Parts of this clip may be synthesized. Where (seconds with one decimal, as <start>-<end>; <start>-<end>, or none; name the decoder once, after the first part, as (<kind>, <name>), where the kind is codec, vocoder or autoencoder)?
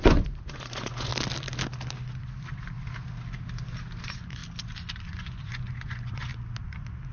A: 0.0-1.1 (vocoder, Vocos); 4.0-4.4; 5.1-6.3